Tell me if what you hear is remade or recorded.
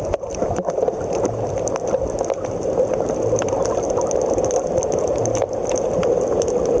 recorded